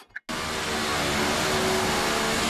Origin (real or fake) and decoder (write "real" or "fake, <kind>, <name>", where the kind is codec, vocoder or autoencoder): real